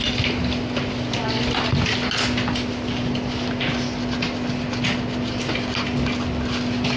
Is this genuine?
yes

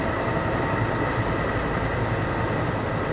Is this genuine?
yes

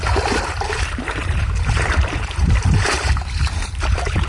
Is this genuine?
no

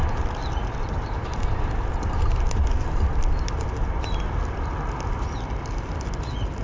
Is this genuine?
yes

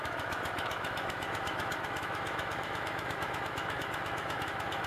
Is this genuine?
no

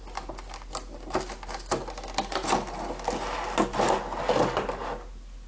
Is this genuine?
yes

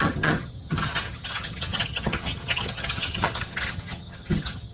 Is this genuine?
no